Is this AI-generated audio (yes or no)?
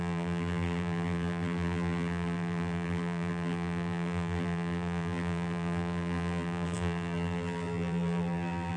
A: yes